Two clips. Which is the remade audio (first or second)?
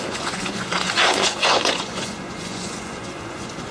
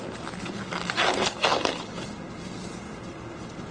first